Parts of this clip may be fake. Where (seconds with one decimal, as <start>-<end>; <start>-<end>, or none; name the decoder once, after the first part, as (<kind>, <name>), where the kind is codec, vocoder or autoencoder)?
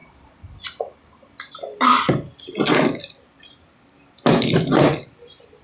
0.0-5.6 (vocoder, BigVGAN v2)